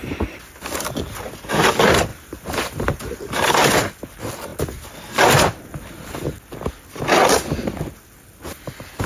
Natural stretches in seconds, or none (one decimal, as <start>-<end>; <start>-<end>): 0.0-2.1; 3.7-9.1